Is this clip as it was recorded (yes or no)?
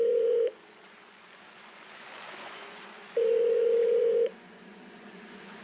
no